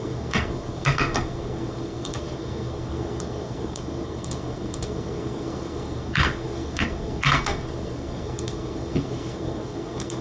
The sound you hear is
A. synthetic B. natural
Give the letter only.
A